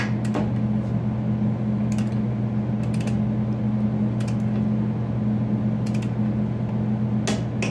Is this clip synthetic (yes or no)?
no